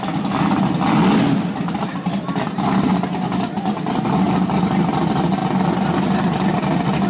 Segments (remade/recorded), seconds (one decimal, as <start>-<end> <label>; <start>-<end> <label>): 0.0-7.1 recorded